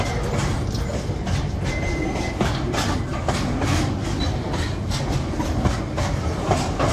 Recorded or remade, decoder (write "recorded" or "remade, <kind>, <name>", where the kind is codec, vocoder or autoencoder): recorded